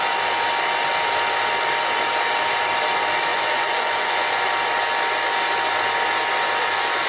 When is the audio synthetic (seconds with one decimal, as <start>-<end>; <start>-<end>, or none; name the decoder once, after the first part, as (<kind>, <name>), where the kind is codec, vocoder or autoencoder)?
3.3-4.5 (vocoder, Vocos)